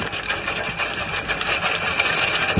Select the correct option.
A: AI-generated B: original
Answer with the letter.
B